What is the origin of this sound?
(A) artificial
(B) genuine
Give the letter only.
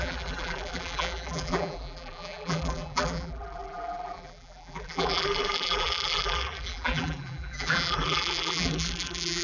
A